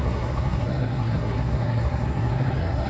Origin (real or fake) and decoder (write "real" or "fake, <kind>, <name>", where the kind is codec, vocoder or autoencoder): fake, codec, SNAC